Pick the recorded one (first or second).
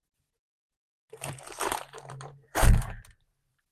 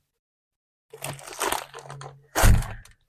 second